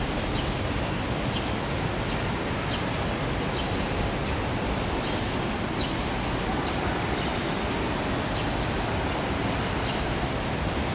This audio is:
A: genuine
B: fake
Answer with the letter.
A